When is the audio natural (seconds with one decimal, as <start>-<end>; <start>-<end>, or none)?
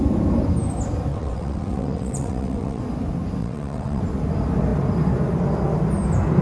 0.0-1.1; 2.8-3.4; 4.0-6.4